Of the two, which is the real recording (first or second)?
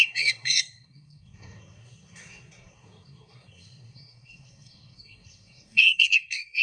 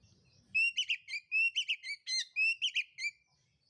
second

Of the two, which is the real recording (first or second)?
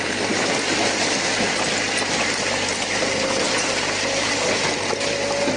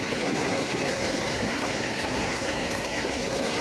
first